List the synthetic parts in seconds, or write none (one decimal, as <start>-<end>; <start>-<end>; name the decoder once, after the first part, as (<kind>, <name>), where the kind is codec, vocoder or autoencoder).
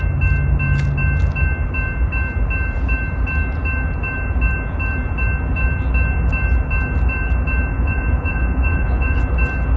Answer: 7.7-9.2 (vocoder, Vocos)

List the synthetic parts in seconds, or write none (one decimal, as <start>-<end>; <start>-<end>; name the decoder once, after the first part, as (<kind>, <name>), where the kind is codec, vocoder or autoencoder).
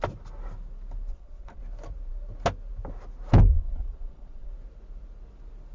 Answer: 1.1-1.6 (vocoder, Vocos); 3.5-4.5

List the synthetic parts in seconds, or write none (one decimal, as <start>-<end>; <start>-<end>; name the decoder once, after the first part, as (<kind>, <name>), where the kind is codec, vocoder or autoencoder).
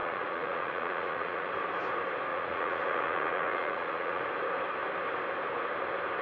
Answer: 0.0-1.5 (vocoder, Vocos); 2.3-4.2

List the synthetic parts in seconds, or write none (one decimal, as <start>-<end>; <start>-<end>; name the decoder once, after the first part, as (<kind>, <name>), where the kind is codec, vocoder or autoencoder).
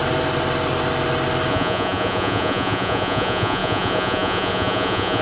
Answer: 1.5-5.2 (vocoder, Vocos)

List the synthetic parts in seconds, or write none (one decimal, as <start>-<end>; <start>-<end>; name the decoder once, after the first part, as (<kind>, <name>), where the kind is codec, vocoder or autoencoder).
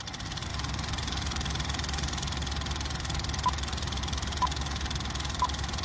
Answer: none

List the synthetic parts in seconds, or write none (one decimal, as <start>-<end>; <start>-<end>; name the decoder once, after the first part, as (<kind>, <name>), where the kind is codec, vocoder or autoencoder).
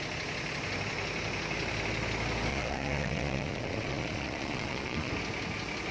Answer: 2.5-5.1 (vocoder, Vocos)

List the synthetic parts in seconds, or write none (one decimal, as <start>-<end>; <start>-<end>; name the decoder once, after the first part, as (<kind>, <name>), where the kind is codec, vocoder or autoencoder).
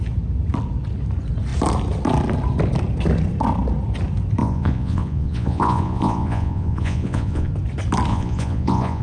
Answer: 4.4-7.5 (vocoder, Vocos); 8.1-9.0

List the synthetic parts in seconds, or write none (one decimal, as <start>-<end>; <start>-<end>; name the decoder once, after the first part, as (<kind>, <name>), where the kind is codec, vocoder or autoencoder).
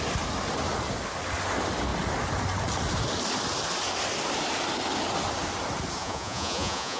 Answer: 6.0-7.0 (vocoder, Vocos)